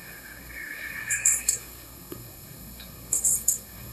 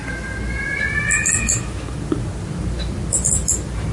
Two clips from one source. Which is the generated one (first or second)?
first